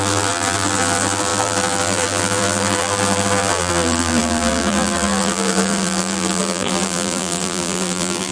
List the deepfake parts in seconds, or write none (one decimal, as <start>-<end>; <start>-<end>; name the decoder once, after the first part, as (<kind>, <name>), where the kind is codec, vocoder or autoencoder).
0.0-8.3 (vocoder, BigVGAN v2)